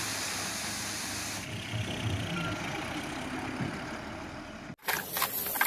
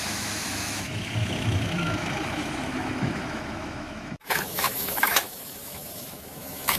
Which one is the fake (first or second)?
second